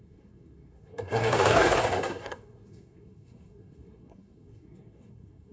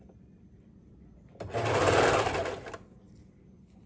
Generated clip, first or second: first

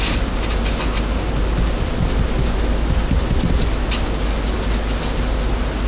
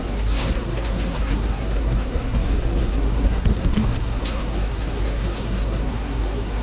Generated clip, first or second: second